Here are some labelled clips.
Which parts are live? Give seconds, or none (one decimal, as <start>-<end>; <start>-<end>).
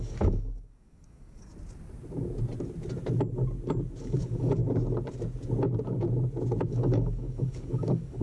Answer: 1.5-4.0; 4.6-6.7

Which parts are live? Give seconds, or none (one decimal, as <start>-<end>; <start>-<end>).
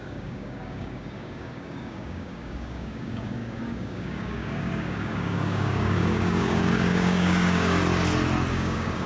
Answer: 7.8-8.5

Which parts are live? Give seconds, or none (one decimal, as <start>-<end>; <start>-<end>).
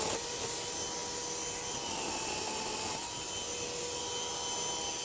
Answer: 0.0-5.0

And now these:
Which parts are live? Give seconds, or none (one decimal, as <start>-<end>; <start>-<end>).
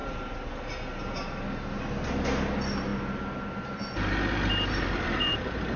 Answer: 0.0-5.8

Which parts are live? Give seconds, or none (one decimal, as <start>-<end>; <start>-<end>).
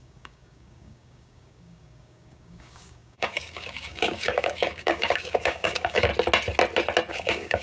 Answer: 6.1-7.1